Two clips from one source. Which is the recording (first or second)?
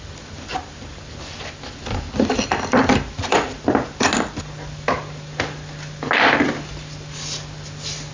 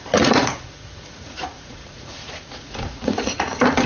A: first